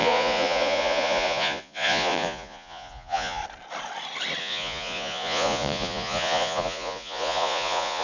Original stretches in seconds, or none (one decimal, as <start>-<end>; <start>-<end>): 3.4-4.4